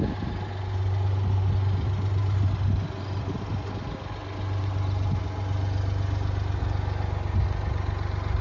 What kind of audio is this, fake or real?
real